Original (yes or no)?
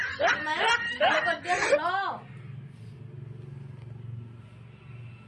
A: yes